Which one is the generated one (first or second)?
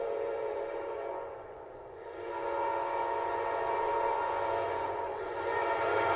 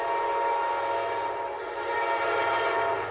first